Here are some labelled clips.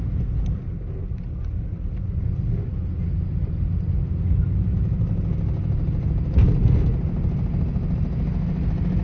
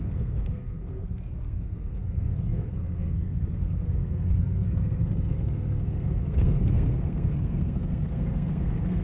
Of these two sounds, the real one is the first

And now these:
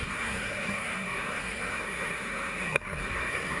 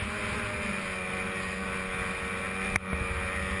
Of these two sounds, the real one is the second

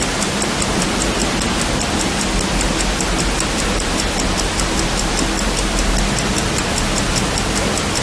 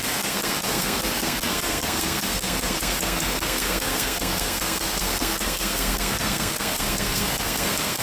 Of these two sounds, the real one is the first